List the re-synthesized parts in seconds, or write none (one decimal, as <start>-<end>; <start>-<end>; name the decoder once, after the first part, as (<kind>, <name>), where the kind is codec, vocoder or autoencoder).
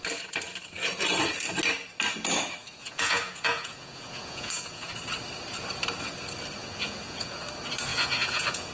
2.6-4.9 (vocoder, Vocos); 6.6-7.4; 7.9-8.7